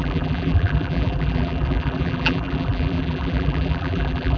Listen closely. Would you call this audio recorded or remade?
remade